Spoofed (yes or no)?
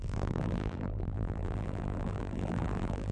yes